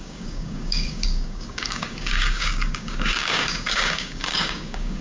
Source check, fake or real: fake